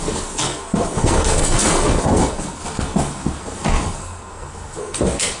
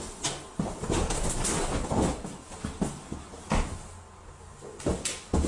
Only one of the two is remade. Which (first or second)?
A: first